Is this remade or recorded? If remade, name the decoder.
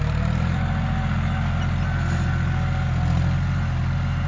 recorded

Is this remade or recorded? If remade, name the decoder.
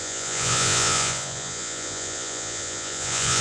remade, vocoder, Vocos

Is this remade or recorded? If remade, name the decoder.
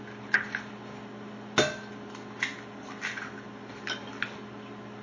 recorded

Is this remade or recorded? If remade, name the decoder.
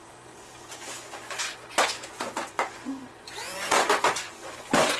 remade, vocoder, Vocos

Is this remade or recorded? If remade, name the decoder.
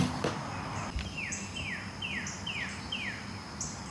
recorded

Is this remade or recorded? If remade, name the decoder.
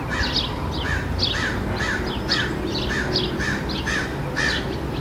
recorded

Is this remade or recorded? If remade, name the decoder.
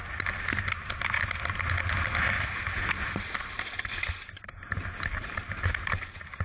recorded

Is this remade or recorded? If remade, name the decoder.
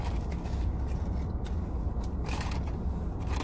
recorded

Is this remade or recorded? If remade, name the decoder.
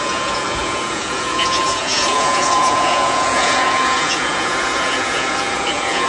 remade, vocoder, Vocos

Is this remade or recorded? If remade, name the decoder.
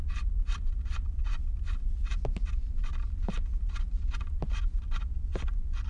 recorded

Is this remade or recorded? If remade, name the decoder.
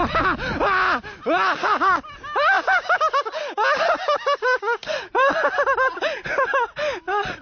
recorded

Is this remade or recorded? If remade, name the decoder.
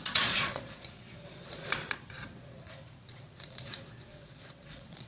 remade, vocoder, Vocos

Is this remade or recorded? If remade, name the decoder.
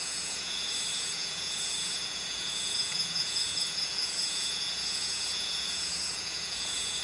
remade, vocoder, Vocos